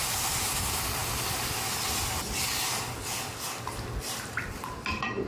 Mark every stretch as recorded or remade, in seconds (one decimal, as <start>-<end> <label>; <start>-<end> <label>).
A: 0.0-1.0 remade; 1.0-4.2 recorded; 4.2-5.3 remade